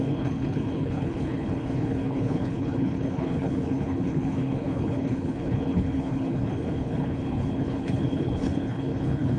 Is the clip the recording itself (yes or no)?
no